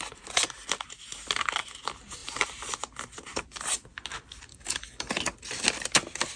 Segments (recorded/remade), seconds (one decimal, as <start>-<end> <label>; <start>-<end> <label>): 0.0-4.5 recorded; 4.5-5.1 remade; 5.1-6.4 recorded